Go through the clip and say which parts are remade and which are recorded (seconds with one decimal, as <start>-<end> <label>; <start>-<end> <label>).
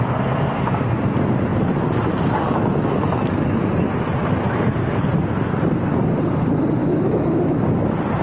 0.0-6.8 recorded; 6.8-7.5 remade; 7.5-8.2 recorded